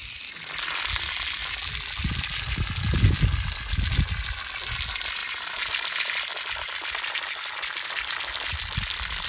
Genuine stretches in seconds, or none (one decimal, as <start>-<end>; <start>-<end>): 0.0-9.3